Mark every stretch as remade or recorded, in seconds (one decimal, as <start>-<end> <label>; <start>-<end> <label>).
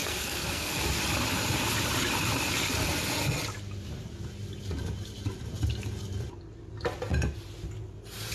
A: 0.0-0.8 remade; 0.8-8.3 recorded